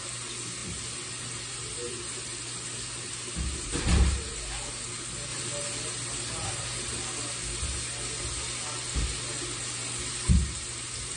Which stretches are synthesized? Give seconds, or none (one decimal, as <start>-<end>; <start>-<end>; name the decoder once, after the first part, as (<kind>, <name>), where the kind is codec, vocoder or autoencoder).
none